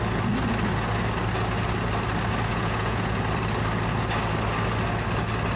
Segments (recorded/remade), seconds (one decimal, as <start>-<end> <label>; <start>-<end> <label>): 0.0-2.5 recorded; 2.5-3.2 remade; 3.2-5.6 recorded